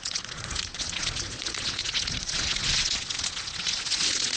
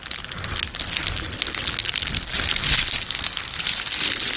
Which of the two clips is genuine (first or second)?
second